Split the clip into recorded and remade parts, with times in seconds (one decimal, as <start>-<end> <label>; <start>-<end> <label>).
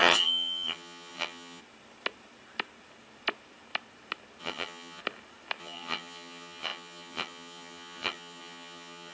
0.0-1.6 remade; 1.6-4.4 recorded; 4.4-5.0 remade; 5.0-5.6 recorded; 5.6-9.1 remade